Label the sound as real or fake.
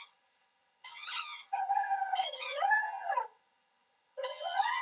fake